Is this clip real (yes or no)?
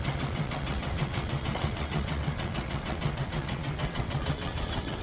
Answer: no